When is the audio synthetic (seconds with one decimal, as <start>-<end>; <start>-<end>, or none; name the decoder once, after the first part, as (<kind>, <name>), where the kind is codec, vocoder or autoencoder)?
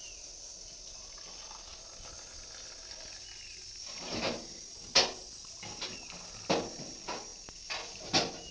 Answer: none